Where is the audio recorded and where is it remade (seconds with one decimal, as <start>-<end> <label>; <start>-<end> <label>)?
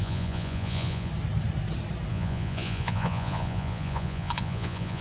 0.0-1.1 remade; 1.1-2.1 recorded; 2.1-5.0 remade